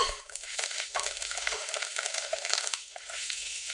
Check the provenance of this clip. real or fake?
fake